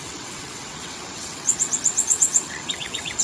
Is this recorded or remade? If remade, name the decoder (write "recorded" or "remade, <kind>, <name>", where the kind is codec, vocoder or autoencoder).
remade, vocoder, WaveNeXt